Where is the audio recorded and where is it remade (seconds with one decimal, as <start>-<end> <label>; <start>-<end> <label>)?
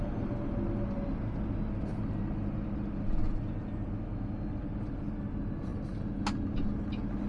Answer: 0.0-7.3 recorded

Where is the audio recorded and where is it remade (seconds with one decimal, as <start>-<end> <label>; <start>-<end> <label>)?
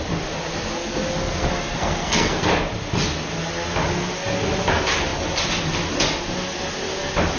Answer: 0.0-1.2 recorded; 1.2-2.5 remade; 2.5-7.4 recorded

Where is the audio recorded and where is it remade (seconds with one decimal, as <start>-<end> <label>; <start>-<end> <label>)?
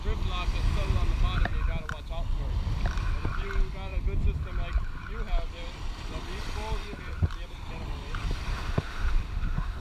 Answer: 0.0-8.5 recorded; 8.5-9.8 remade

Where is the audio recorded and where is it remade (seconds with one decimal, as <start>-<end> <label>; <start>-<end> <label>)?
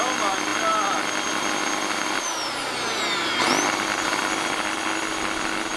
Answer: 0.0-5.8 recorded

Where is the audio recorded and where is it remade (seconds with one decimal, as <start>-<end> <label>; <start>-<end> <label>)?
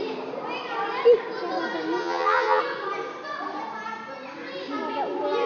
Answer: 0.0-2.0 recorded; 2.0-2.6 remade; 2.6-5.5 recorded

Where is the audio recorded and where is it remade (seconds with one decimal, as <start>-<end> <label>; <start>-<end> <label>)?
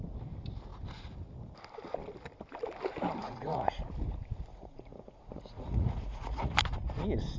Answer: 0.0-3.2 recorded; 3.2-3.8 remade; 3.8-4.5 recorded; 4.5-6.6 remade; 6.6-7.4 recorded